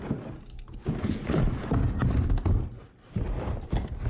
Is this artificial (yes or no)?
no